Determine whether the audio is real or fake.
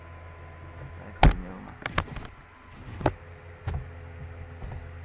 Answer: real